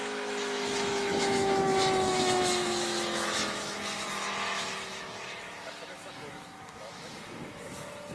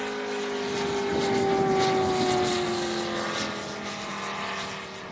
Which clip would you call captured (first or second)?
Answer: second